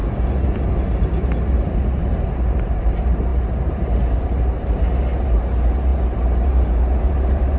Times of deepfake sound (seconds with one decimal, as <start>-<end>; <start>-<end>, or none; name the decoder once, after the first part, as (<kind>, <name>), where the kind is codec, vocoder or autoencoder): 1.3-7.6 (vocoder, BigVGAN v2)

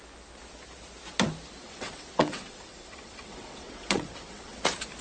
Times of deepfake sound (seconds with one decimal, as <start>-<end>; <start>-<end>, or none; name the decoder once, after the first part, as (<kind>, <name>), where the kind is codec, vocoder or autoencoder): 1.6-4.6 (vocoder, WaveNeXt)

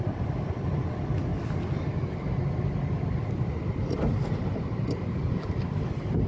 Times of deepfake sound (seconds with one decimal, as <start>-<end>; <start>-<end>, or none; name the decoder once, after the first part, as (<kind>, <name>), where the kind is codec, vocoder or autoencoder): none